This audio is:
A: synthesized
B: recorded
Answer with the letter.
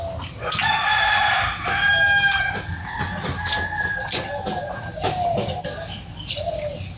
B